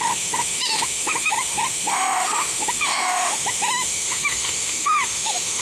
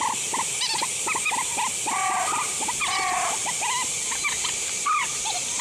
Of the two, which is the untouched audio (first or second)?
second